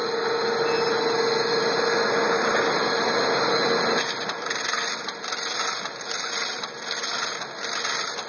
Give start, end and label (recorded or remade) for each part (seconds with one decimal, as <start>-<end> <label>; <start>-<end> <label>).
0.0-8.3 recorded